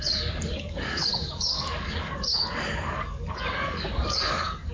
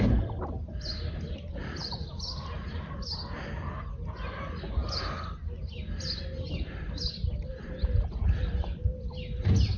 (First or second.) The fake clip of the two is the first